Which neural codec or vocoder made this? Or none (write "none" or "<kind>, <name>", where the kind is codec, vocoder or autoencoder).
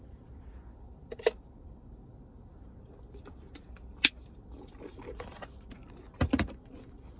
vocoder, BigVGAN v2